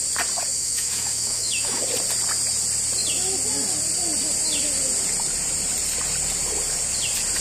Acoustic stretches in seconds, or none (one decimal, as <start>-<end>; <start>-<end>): 0.0-0.5; 1.8-7.4